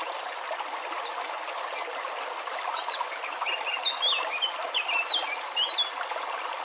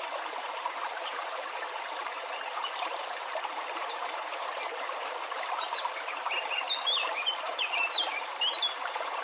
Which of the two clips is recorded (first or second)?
first